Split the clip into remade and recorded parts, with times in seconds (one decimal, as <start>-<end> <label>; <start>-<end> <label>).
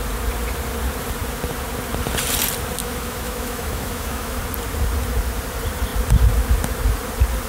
0.0-2.8 recorded; 2.8-4.4 remade; 4.4-7.5 recorded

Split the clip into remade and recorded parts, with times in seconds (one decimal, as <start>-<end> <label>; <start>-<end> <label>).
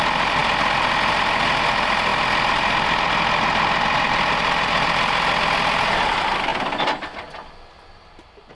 0.0-8.5 recorded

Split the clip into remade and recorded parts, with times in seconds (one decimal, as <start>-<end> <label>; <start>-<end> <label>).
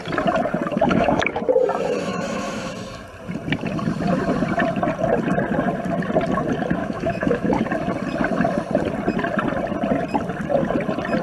0.0-0.7 recorded; 0.7-1.4 remade; 1.4-2.1 recorded; 2.1-2.7 remade; 2.7-6.8 recorded; 6.8-7.6 remade; 7.6-11.2 recorded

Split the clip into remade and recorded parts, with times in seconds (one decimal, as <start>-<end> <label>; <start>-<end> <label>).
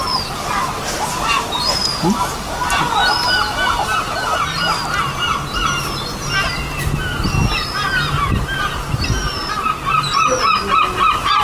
0.0-11.4 recorded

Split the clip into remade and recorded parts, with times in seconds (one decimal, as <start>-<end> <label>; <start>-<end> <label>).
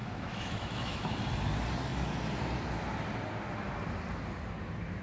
0.0-1.2 remade; 1.2-5.0 recorded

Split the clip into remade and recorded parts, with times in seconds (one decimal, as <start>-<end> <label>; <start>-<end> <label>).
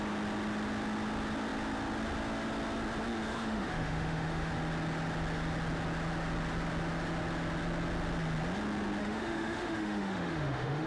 0.0-3.3 recorded; 3.3-4.5 remade; 4.5-9.0 recorded; 9.0-10.9 remade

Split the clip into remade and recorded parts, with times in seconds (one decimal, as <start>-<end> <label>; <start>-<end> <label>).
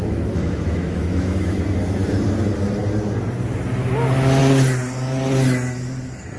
0.0-1.6 remade; 1.6-6.4 recorded